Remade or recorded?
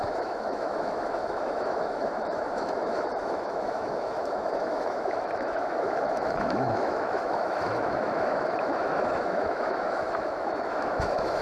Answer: remade